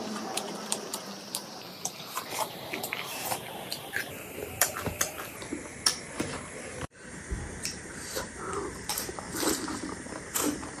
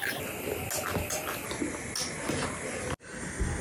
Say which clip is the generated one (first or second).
first